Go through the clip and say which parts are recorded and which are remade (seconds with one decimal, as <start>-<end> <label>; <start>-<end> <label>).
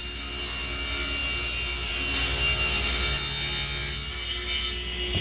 0.0-5.2 recorded